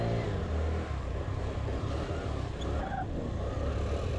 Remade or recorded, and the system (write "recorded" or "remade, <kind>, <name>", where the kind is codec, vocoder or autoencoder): recorded